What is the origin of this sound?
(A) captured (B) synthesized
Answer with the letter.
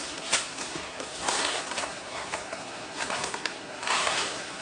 B